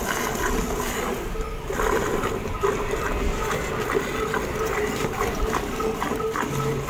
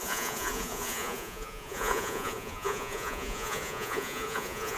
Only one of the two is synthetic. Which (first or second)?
second